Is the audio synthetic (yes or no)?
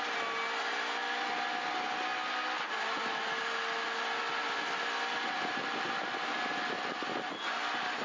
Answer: no